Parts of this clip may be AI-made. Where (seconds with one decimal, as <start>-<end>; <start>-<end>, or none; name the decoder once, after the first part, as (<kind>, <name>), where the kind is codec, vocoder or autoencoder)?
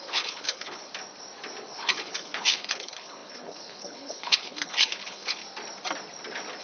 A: 0.0-0.9 (codec, HILCodec); 1.7-5.4